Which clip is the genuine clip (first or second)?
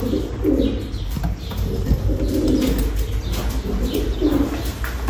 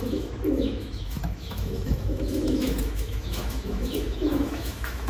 first